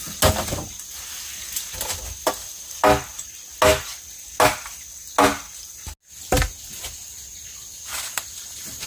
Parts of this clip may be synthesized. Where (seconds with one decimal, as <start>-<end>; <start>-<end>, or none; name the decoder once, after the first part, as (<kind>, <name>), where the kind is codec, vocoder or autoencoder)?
none